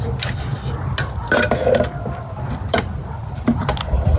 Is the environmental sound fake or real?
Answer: real